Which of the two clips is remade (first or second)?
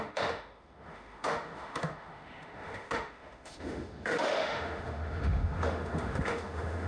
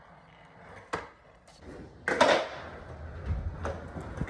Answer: first